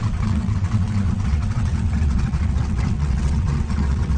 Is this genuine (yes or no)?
no